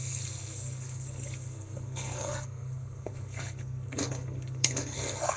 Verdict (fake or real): fake